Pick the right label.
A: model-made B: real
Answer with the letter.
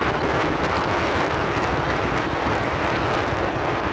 B